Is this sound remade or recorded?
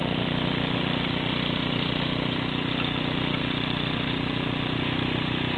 recorded